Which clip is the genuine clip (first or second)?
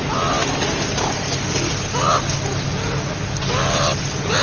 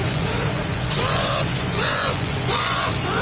first